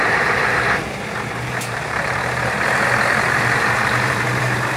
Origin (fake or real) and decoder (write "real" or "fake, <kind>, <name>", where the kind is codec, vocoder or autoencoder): fake, vocoder, BigVGAN v2